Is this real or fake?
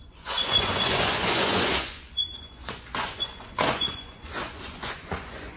fake